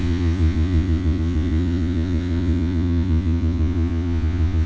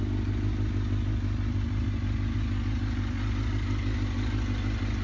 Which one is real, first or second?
second